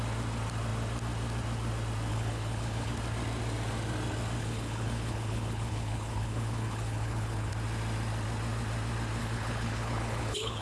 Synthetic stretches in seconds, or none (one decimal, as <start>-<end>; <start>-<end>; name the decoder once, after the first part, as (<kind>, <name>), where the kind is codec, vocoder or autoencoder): 2.1-2.9 (codec, HILCodec); 4.4-7.5; 9.2-10.6